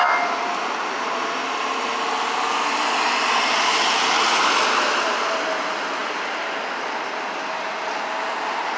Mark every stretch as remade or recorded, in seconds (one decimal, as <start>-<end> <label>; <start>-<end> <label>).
0.0-8.8 recorded